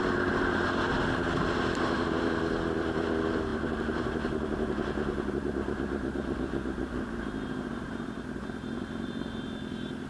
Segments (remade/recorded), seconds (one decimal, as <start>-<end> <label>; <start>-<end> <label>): 0.0-10.1 recorded